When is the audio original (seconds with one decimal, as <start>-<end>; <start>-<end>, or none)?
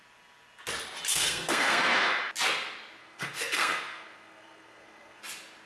0.0-1.1; 2.2-3.0; 5.2-5.7